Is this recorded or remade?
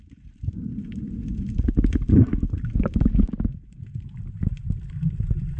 recorded